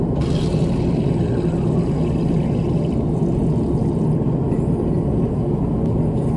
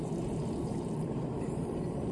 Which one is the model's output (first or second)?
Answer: second